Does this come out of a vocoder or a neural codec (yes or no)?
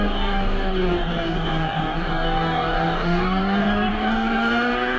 yes